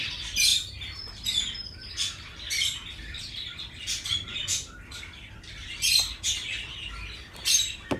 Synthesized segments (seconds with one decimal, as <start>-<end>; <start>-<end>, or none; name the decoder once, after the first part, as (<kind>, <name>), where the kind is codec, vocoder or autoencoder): none